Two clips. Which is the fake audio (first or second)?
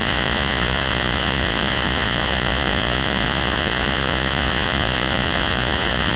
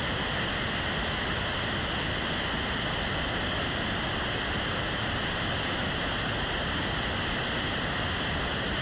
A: first